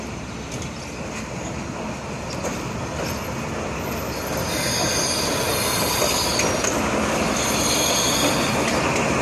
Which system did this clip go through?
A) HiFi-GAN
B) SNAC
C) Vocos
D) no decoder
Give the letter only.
D